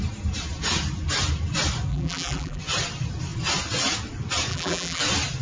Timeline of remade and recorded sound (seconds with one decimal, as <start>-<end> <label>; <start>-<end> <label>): 0.0-1.9 recorded; 1.9-2.6 remade; 2.6-4.5 recorded; 4.5-5.0 remade; 5.0-5.4 recorded